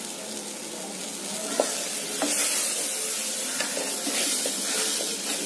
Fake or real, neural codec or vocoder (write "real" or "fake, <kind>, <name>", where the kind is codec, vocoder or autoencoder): real